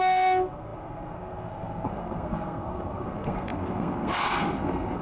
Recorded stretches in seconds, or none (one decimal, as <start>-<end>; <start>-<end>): none